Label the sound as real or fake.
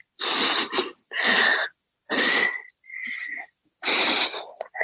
real